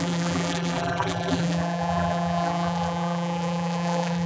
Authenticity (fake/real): fake